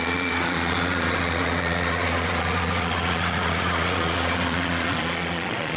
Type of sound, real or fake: fake